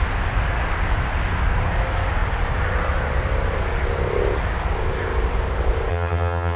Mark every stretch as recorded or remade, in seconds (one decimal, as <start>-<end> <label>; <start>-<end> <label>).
0.0-5.9 recorded; 5.9-6.6 remade